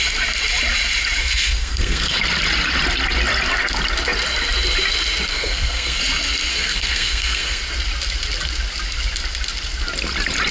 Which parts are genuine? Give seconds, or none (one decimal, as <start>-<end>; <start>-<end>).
0.0-1.2; 2.2-5.3; 6.0-6.5; 7.6-10.5